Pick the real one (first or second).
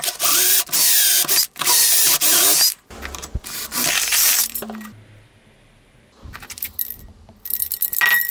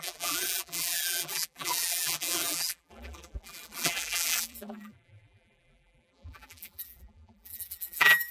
first